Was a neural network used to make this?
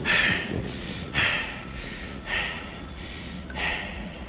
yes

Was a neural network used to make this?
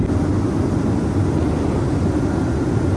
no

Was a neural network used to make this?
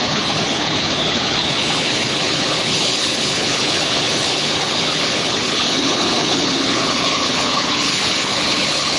yes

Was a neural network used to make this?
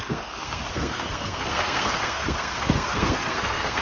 yes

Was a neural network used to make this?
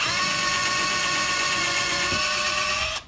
yes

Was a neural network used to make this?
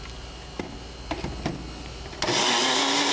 no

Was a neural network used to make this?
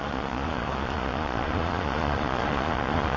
yes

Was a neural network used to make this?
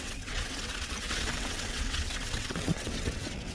yes